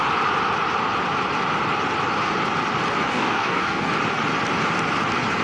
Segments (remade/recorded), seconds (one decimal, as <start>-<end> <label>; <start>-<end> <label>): 0.0-3.1 recorded; 3.1-3.9 remade; 3.9-5.4 recorded